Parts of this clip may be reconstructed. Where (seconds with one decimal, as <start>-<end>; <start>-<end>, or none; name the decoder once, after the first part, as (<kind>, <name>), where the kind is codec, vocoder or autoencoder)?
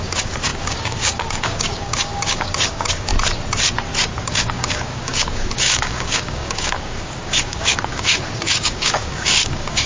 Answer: 0.0-3.1 (codec, DAC); 4.2-9.9